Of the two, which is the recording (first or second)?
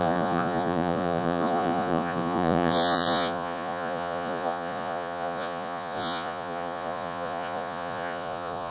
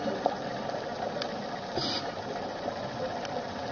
second